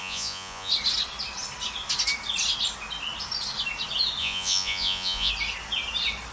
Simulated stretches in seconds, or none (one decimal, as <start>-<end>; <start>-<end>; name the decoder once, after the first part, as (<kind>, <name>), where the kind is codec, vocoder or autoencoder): 0.0-0.7 (vocoder, Vocos); 4.2-5.3